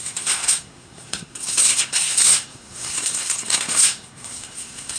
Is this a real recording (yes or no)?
no